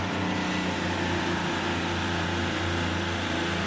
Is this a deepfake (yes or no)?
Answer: no